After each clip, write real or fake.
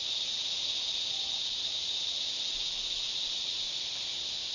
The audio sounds real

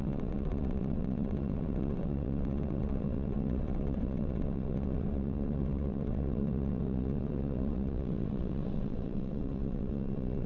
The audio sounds fake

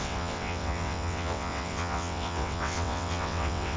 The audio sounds fake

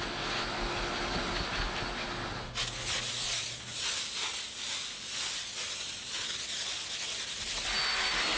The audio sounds real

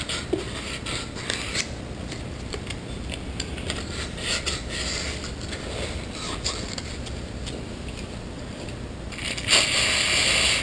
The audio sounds real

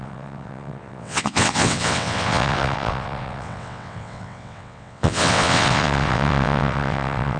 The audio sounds fake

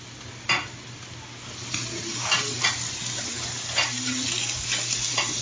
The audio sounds real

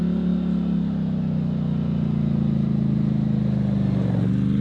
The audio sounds real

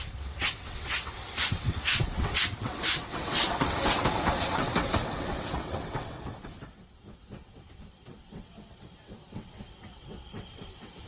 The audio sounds fake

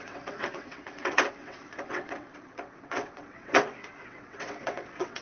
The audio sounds fake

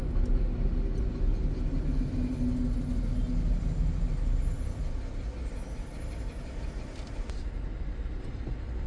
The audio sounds real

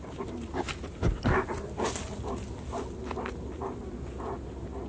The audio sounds real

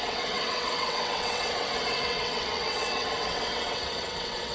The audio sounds fake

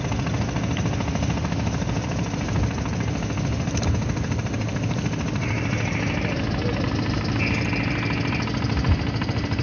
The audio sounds real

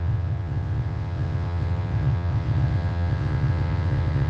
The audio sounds fake